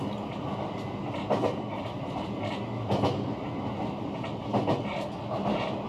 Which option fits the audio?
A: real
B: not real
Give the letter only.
A